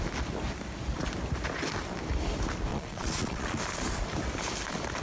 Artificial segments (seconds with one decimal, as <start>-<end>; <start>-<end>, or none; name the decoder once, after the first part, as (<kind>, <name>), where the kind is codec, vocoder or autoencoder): 2.7-3.6 (vocoder, Vocos)